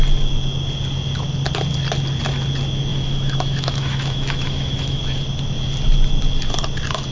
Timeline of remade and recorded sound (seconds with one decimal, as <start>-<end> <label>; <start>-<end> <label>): 0.0-2.9 recorded; 2.9-5.0 remade; 5.0-7.1 recorded